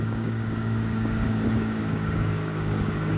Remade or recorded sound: remade